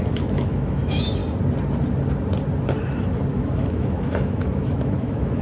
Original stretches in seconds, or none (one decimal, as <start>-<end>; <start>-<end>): 1.2-3.3